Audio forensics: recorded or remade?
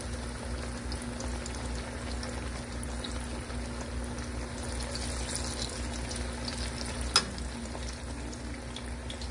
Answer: recorded